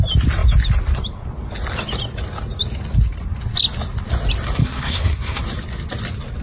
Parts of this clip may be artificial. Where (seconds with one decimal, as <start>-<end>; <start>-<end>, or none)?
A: 4.6-5.4